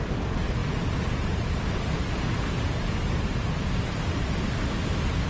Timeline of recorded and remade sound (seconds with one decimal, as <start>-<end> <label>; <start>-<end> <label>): 0.0-5.3 recorded